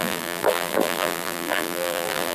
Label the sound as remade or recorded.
remade